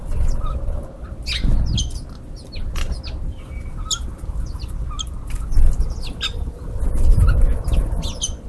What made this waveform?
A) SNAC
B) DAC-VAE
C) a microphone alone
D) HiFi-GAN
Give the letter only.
C